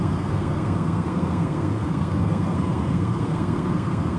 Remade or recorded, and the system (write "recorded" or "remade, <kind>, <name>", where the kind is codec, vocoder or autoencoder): remade, codec, SNAC